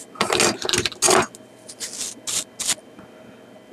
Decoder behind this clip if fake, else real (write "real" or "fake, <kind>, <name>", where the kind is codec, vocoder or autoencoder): real